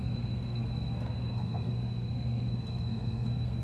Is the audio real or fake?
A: fake